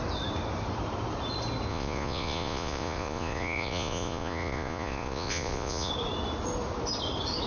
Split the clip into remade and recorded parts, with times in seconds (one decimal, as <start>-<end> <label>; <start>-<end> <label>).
0.0-1.7 recorded; 1.7-5.9 remade; 5.9-7.5 recorded